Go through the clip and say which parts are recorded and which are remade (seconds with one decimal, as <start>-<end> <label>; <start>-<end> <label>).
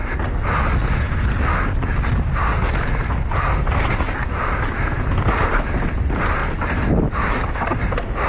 0.0-8.3 recorded